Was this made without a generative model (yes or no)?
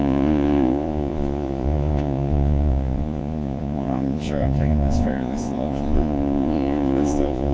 no